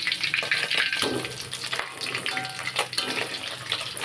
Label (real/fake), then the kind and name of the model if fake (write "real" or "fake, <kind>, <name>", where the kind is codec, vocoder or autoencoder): real